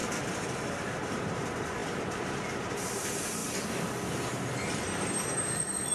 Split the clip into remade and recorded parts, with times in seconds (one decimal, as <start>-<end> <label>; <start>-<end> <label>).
0.0-0.8 recorded; 0.8-3.4 remade; 3.4-5.4 recorded; 5.4-5.9 remade